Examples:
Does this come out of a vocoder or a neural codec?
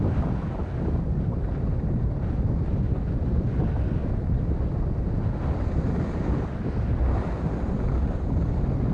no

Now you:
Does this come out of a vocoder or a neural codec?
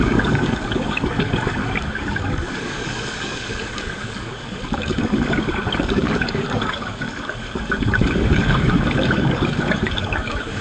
yes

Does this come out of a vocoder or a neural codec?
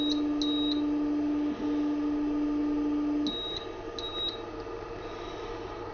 no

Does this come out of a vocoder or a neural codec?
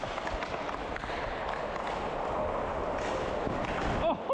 no